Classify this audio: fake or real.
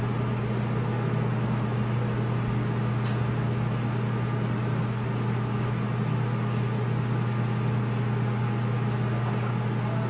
real